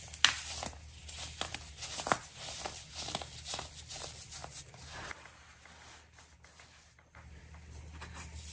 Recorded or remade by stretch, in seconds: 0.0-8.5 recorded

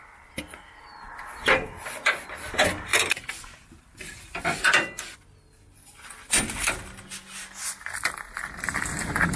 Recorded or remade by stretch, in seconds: 0.0-9.4 recorded